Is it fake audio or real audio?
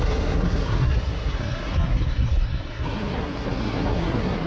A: fake